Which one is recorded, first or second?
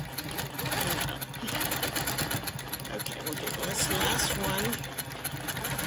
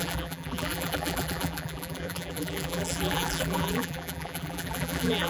first